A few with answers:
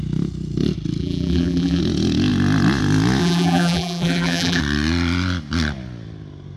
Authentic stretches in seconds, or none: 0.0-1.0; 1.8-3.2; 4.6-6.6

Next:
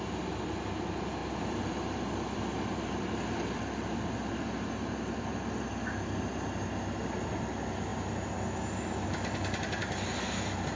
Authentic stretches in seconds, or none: 0.0-1.2; 4.3-10.8